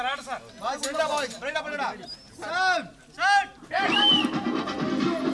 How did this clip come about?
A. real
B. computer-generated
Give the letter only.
A